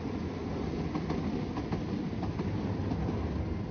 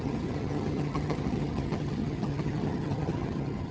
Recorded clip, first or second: first